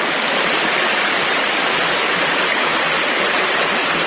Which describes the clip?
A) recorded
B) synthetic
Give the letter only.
A